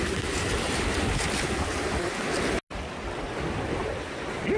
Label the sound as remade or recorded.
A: recorded